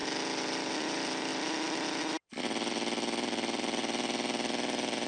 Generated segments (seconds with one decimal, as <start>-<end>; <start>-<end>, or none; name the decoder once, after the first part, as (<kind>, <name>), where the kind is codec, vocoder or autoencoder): none